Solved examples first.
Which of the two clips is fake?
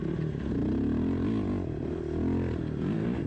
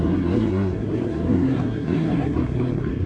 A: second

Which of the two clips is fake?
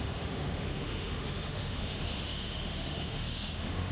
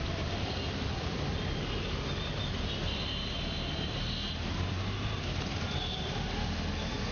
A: first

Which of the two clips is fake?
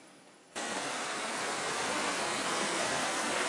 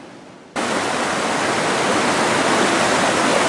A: first